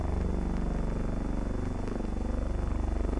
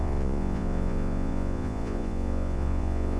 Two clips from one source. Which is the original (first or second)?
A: first